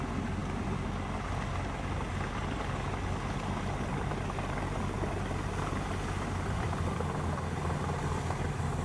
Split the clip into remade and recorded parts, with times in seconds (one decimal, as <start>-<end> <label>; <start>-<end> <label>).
0.0-8.8 recorded